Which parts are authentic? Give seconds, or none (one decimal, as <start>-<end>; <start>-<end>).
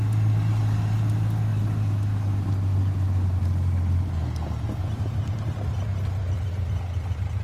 0.0-7.4